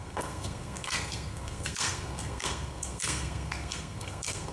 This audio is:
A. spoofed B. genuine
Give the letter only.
A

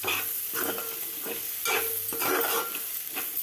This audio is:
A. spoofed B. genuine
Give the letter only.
B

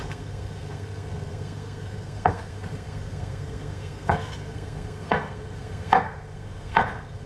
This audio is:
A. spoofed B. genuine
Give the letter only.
A